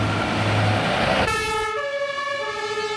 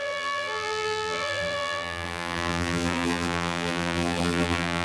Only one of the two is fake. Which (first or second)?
second